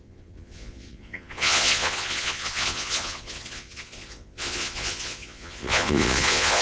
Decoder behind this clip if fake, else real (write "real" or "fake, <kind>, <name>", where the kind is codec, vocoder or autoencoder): fake, vocoder, Vocos